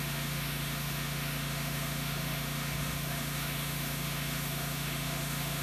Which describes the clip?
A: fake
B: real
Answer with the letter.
A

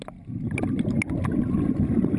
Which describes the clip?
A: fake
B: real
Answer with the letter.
B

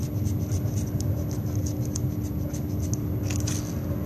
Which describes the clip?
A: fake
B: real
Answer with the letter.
B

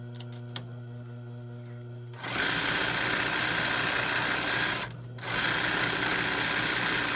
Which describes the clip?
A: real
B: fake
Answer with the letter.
A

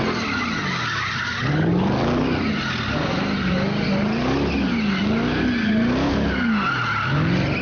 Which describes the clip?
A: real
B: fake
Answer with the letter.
A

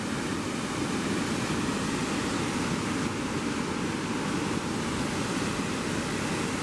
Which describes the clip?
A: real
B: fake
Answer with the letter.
A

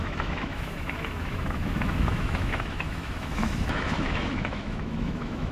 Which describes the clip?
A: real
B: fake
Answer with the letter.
B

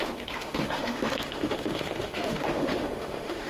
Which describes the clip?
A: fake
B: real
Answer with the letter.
A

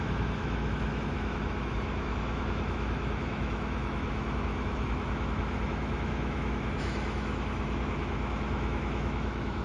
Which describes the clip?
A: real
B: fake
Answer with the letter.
B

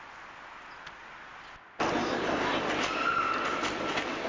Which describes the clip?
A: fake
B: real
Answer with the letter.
B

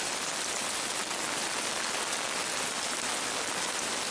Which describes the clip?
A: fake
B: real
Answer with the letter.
B